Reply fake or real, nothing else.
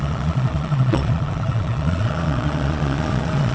fake